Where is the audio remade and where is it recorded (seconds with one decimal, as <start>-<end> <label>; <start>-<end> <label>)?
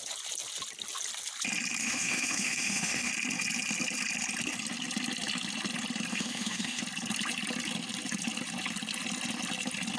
0.0-1.8 recorded; 1.8-3.1 remade; 3.1-6.1 recorded; 6.1-6.8 remade; 6.8-10.0 recorded